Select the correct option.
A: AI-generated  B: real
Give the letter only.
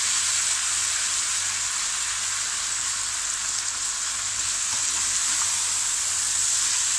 B